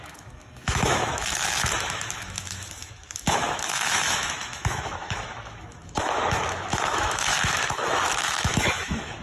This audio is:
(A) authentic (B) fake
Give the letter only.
B